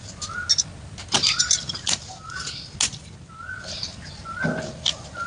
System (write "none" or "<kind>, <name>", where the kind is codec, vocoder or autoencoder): none